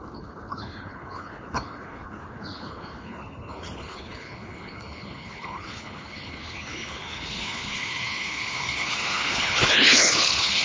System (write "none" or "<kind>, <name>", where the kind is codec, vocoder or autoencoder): codec, HILCodec